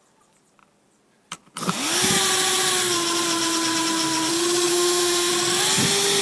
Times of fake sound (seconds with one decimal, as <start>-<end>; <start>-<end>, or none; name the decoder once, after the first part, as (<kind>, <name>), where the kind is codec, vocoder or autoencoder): 4.7-5.3 (autoencoder, DAC-VAE)